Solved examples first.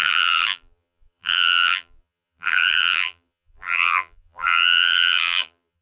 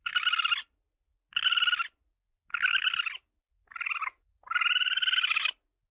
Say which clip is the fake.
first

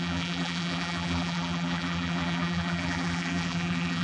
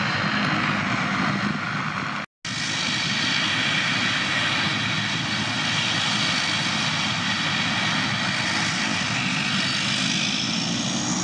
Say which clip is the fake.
first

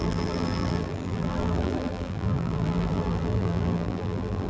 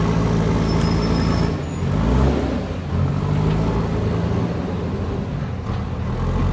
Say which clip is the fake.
first